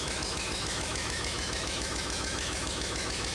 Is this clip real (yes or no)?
no